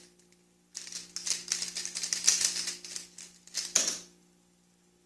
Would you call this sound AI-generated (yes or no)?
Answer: no